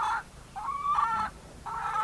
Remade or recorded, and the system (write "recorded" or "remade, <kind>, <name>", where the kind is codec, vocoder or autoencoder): remade, vocoder, BigVGAN v2